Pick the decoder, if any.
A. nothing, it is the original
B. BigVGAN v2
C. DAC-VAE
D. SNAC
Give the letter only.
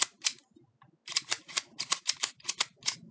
A